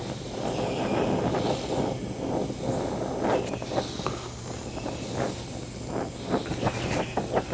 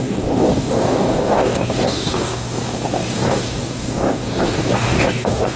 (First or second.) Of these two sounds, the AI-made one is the second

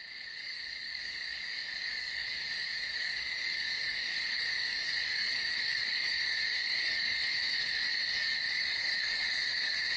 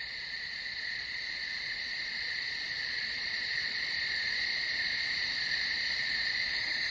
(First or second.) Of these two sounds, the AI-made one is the first